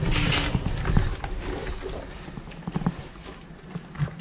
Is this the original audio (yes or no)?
yes